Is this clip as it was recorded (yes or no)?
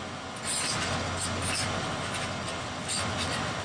yes